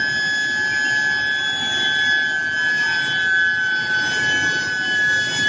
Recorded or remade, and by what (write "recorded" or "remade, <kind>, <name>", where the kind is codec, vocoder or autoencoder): recorded